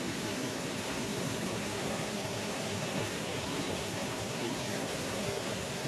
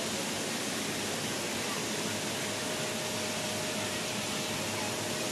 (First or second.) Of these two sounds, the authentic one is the second